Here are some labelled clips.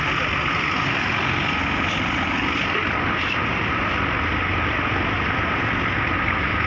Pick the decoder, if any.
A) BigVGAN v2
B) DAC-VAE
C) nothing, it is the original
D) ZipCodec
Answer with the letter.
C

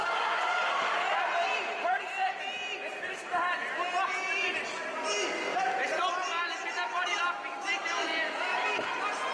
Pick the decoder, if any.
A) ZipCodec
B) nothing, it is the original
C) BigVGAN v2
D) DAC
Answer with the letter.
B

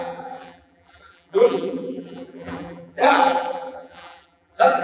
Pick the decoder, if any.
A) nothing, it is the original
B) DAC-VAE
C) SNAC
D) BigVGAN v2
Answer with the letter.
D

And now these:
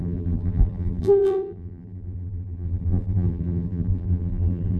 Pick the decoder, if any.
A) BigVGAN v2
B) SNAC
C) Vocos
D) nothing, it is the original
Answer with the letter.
A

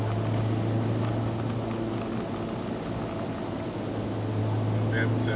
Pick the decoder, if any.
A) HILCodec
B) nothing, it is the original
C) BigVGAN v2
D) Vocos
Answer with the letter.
B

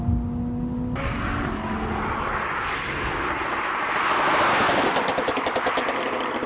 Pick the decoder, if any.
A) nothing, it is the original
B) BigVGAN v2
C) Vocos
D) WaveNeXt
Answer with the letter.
A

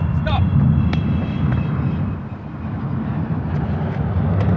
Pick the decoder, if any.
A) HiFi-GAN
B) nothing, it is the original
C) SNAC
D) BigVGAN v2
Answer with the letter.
B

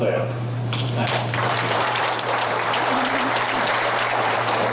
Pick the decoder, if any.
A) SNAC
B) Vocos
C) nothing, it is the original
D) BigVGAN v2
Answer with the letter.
D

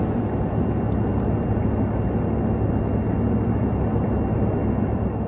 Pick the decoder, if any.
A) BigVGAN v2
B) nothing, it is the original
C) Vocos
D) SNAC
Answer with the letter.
B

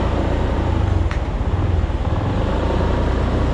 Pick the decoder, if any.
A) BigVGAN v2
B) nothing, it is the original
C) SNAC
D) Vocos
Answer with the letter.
B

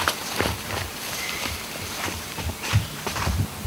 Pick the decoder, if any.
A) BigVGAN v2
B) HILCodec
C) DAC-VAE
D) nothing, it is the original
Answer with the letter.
A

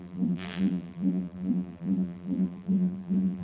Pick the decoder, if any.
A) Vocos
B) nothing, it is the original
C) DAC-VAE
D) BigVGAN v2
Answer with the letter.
D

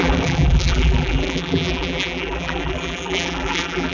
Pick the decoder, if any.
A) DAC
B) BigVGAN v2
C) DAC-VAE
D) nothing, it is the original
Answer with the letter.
B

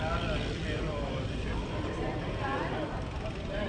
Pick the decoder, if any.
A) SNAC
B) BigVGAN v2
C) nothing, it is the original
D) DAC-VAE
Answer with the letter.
B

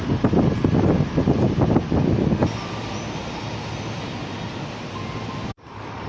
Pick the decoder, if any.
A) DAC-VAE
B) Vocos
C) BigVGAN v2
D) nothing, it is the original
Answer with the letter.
D